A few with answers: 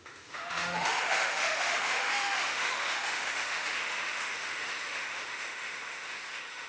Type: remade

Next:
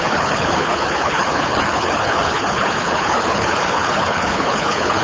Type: remade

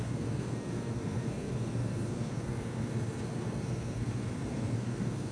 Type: remade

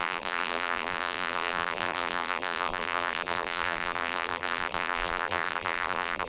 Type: remade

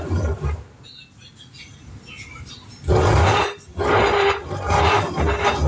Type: recorded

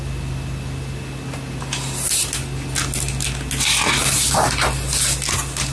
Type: recorded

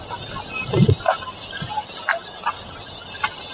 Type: recorded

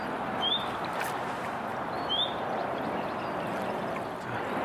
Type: recorded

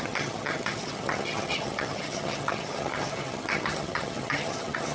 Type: remade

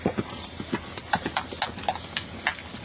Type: recorded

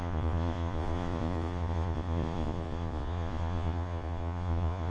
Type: remade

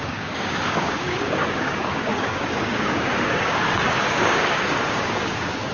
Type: remade